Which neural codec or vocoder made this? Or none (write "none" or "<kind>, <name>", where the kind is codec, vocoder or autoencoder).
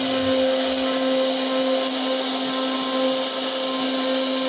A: none